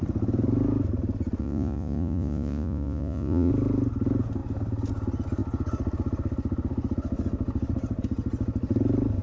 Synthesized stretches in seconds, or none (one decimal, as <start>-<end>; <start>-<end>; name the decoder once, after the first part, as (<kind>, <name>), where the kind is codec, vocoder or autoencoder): 1.4-3.5 (vocoder, Vocos)